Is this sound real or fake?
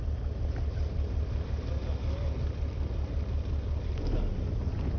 real